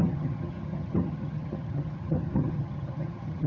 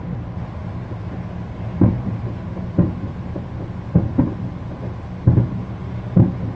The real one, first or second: second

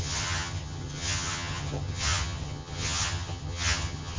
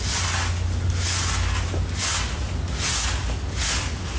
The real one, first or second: second